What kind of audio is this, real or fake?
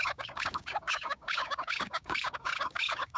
fake